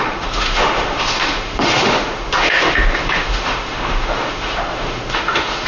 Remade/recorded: remade